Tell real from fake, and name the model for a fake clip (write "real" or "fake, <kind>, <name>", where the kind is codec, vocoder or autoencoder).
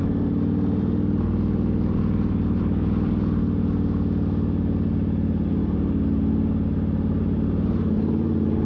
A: real